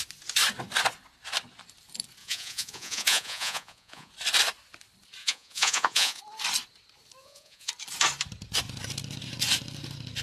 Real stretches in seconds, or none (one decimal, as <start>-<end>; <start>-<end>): 0.0-2.2; 4.1-5.2; 6.2-7.2; 7.7-10.2